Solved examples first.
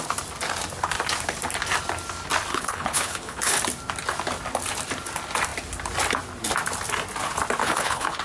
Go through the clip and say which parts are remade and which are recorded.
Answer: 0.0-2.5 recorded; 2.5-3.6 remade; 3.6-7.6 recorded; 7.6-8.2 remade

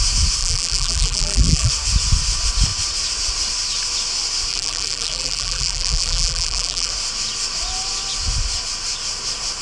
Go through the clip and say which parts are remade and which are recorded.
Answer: 0.0-0.4 recorded; 0.4-1.7 remade; 1.7-4.5 recorded; 4.5-6.9 remade; 6.9-9.6 recorded

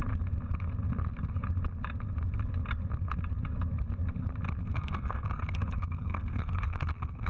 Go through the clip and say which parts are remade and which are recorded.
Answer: 0.0-4.6 recorded; 4.6-7.3 remade

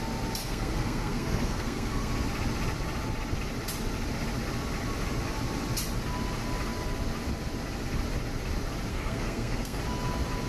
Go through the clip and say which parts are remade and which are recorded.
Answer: 0.0-0.4 recorded; 0.4-2.1 remade; 2.1-8.9 recorded; 8.9-9.8 remade; 9.8-10.5 recorded